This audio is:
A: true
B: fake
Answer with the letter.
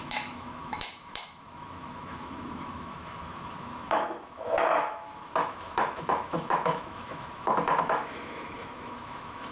B